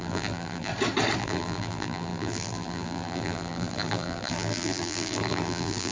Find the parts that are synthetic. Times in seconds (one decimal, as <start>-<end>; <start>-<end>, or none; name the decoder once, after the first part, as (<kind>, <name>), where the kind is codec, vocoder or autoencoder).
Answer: 0.0-0.7 (vocoder, BigVGAN v2); 1.2-5.9